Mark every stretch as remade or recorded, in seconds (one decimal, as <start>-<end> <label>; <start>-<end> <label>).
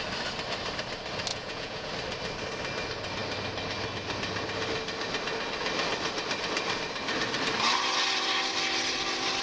0.0-1.3 recorded; 1.3-1.9 remade; 1.9-9.4 recorded